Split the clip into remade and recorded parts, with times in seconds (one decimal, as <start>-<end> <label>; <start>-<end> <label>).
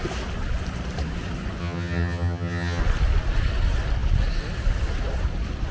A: 0.0-1.6 recorded; 1.6-2.8 remade; 2.8-5.7 recorded